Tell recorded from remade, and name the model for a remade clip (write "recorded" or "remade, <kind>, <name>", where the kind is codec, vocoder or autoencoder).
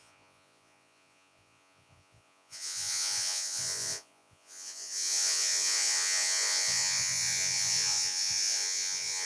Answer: remade, vocoder, Vocos